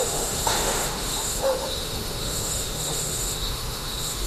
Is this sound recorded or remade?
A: remade